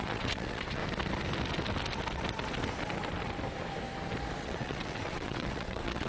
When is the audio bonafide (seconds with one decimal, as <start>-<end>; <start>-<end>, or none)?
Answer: 0.8-4.4